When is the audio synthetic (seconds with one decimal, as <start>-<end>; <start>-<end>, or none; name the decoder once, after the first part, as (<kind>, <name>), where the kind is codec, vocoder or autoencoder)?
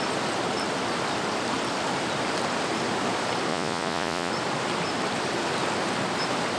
3.5-4.3 (vocoder, Vocos)